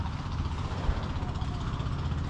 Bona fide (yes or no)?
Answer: yes